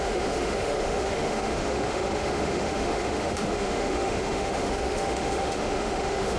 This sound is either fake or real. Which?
fake